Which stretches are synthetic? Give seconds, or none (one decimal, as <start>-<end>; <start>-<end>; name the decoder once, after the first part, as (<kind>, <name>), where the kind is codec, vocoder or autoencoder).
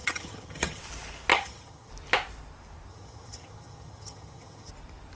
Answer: 0.0-0.8 (vocoder, HiFi-GAN); 1.3-1.9; 2.9-4.7